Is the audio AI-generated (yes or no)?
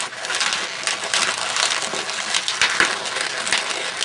no